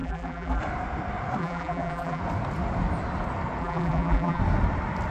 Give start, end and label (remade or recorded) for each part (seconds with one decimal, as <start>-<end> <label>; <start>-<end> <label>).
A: 0.0-0.6 remade; 0.6-1.4 recorded; 1.4-2.2 remade; 2.2-3.6 recorded; 3.6-4.4 remade; 4.4-5.1 recorded